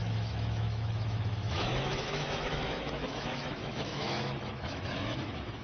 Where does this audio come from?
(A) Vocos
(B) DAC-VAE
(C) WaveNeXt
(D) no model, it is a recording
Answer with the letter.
B